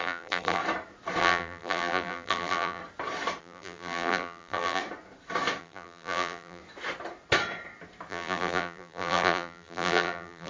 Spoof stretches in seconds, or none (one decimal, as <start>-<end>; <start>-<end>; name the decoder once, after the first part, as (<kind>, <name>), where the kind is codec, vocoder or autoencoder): 0.0-0.6 (vocoder, BigVGAN v2); 1.2-2.8; 3.4-4.8; 5.6-6.6; 8.1-10.5